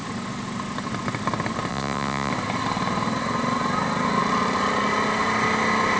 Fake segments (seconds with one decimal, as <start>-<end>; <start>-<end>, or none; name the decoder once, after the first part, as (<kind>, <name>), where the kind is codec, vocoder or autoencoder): 1.7-2.3 (vocoder, Vocos)